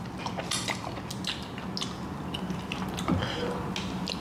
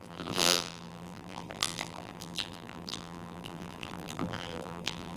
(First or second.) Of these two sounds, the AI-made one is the second